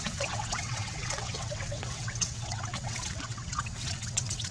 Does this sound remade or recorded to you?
remade